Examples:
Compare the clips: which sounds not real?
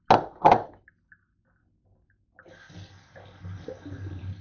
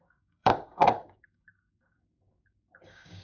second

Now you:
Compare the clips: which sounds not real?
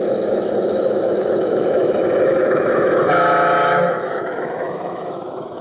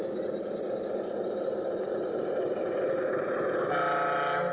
first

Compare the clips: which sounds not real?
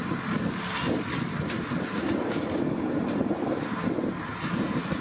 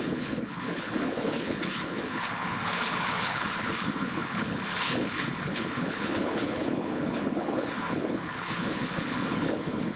second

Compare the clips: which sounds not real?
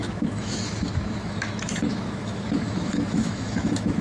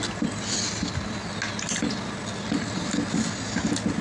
first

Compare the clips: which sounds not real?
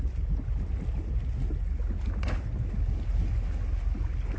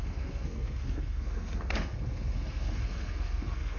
second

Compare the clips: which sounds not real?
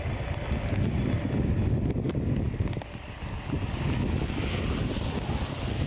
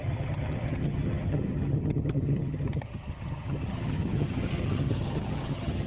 second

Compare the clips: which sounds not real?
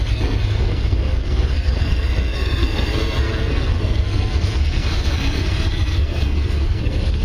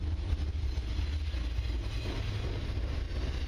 first